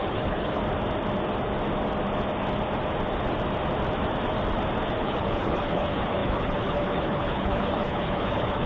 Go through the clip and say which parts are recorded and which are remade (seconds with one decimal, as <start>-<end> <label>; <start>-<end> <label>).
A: 0.0-0.6 remade; 0.6-5.0 recorded; 5.0-8.7 remade